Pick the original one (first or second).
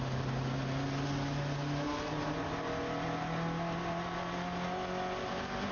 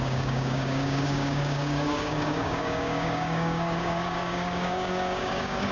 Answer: first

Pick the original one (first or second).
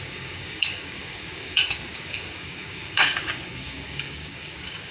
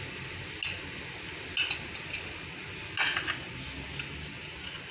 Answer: second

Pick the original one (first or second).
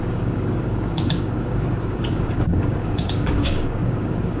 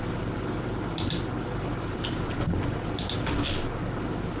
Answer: second